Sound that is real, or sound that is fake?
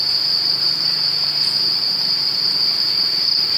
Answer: fake